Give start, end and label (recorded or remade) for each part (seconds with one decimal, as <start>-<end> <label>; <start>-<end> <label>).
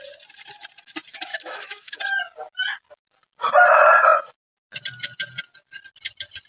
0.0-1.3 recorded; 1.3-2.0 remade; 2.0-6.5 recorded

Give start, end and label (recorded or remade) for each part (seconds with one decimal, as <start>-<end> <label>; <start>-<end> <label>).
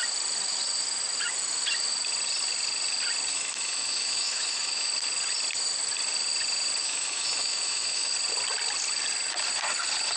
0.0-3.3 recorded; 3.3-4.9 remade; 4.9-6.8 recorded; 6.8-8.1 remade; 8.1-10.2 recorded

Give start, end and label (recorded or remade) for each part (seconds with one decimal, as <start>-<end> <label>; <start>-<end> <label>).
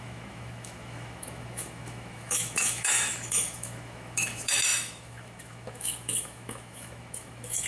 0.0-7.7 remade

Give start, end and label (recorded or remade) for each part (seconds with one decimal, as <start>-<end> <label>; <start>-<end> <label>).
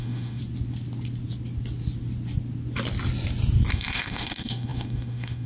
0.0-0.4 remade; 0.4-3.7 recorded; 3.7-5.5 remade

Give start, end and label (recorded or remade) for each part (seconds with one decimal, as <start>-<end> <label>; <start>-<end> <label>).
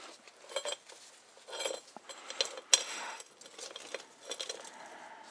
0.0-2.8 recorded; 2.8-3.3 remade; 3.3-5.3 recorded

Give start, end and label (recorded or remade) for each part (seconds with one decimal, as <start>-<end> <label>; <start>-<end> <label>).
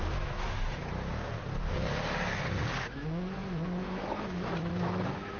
0.0-1.1 remade; 1.1-2.9 recorded; 2.9-5.4 remade